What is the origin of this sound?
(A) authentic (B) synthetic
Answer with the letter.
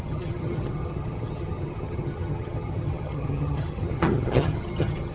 B